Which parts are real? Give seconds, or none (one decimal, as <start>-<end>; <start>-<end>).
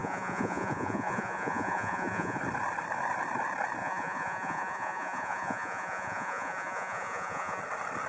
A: 2.4-3.8; 7.6-8.1